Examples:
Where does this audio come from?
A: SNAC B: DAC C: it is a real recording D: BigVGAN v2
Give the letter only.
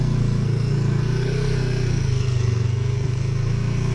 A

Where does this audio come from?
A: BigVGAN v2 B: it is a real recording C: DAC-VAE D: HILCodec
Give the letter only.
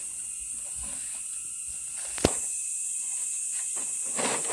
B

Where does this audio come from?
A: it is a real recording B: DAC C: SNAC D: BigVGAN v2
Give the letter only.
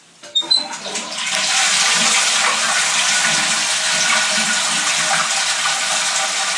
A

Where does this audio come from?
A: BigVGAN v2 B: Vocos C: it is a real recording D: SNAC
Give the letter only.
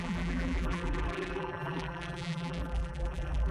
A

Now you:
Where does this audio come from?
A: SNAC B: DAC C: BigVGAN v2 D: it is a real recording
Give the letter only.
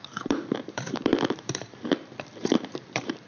C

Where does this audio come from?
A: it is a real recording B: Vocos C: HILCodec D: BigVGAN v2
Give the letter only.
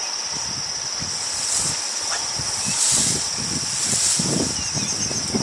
A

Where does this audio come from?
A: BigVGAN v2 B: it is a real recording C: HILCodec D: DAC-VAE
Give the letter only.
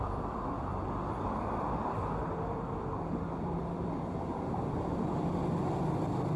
A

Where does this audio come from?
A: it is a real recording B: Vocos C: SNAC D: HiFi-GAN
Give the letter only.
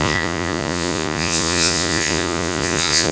B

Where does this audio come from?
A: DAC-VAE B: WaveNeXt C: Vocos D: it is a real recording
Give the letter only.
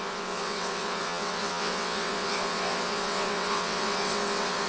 B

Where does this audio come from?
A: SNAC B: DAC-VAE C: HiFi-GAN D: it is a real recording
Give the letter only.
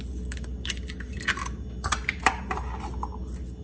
D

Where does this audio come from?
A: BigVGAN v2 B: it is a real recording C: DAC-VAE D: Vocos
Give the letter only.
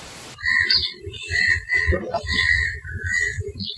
D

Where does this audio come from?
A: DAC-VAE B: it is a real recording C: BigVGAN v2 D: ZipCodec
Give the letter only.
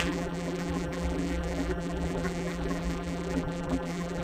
C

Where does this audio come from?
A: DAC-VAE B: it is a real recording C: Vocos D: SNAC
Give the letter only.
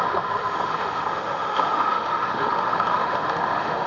A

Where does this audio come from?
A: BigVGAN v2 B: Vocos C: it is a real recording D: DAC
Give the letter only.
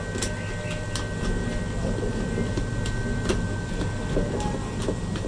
C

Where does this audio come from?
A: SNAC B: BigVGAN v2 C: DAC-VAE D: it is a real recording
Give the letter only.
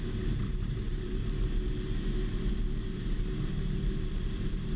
B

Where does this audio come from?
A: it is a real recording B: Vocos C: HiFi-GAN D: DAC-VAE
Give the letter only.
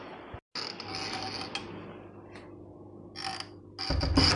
A